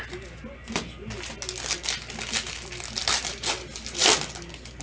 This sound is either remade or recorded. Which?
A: recorded